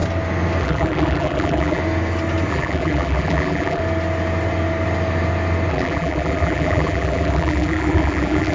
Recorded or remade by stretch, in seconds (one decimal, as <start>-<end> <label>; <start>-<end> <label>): 0.0-0.6 recorded; 0.6-1.8 remade; 1.8-2.5 recorded; 2.5-3.8 remade; 3.8-5.7 recorded; 5.7-8.5 remade